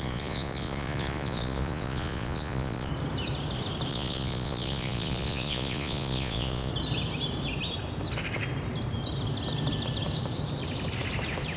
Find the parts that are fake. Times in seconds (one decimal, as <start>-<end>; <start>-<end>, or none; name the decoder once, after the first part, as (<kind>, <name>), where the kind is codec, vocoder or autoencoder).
0.0-2.9 (vocoder, Vocos); 3.9-6.7